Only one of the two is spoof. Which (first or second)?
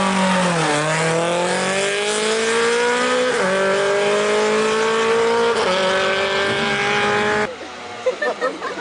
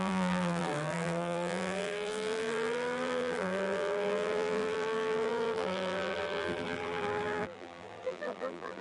second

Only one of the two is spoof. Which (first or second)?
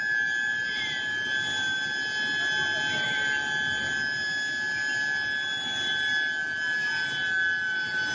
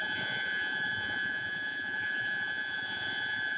second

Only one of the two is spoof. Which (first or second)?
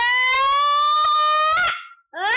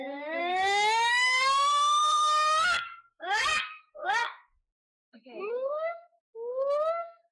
second